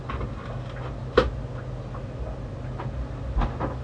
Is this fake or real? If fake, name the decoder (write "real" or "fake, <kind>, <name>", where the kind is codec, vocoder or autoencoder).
real